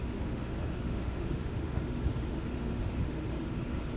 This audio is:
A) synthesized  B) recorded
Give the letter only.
A